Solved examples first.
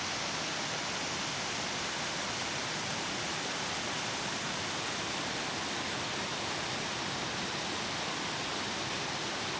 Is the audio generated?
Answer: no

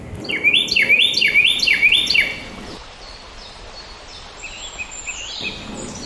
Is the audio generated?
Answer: no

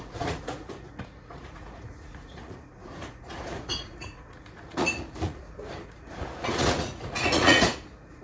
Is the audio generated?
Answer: yes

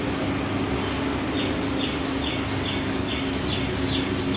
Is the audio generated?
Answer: no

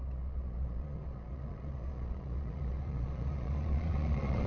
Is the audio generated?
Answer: yes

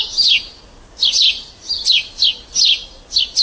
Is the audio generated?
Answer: no